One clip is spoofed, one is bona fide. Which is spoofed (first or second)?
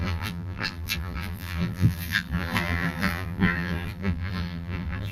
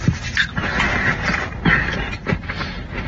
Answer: first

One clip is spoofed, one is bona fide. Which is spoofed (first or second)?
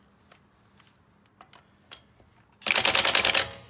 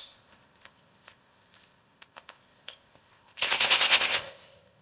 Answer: second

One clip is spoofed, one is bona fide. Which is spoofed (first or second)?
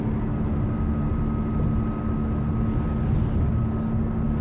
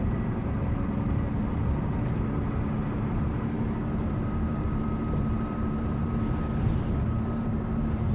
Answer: second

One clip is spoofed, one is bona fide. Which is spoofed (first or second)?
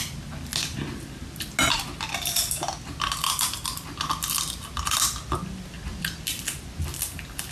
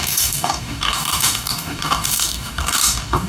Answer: second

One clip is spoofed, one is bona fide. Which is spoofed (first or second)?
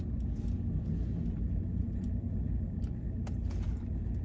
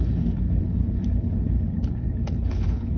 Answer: second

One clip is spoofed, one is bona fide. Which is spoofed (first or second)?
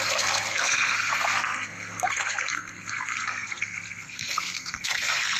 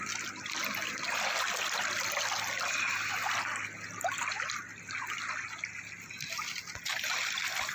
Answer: first